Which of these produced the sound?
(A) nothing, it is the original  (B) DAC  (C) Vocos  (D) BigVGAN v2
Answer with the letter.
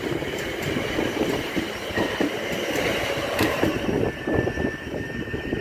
D